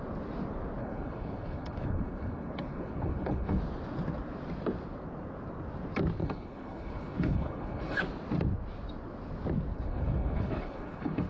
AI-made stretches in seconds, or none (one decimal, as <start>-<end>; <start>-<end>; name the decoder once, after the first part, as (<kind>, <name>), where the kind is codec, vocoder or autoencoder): 0.8-3.6 (codec, HILCodec); 6.2-8.0; 9.7-11.3